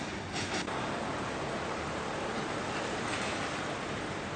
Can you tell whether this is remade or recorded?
recorded